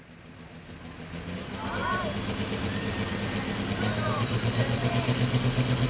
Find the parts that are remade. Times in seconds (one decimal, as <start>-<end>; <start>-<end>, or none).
none